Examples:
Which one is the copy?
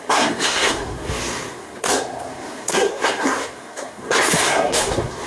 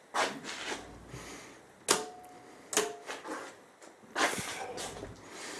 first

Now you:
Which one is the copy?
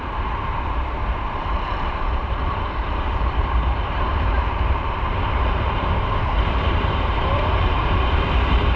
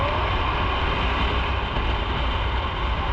first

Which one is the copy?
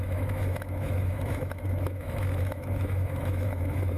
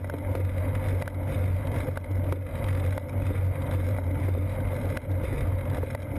first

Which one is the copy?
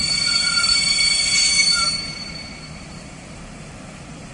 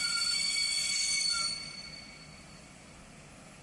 first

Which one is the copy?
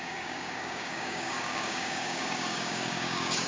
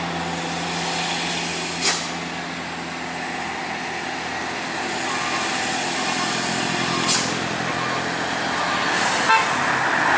first